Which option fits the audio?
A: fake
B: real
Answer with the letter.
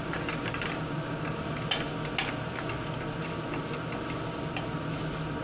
B